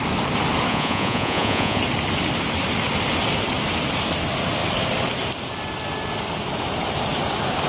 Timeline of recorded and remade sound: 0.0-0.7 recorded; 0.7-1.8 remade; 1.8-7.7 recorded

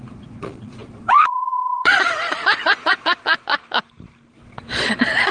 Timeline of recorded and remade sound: 0.0-3.6 remade; 3.6-4.3 recorded; 4.3-5.3 remade

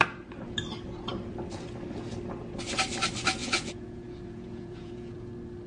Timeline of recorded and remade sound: 0.0-3.4 recorded; 3.4-5.3 remade; 5.3-5.7 recorded

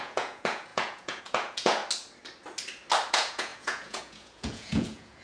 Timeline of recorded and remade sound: 0.0-1.8 remade; 1.8-3.1 recorded; 3.1-5.2 remade

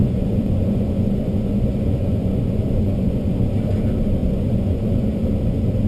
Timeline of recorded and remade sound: 0.0-3.5 remade; 3.5-4.2 recorded; 4.2-5.2 remade; 5.2-5.9 recorded